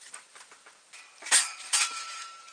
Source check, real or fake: fake